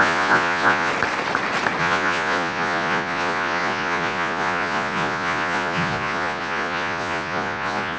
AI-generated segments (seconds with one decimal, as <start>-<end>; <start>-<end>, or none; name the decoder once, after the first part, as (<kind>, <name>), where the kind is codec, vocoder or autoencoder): 0.0-0.9 (vocoder, Vocos); 1.8-8.0